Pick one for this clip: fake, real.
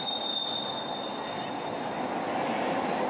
real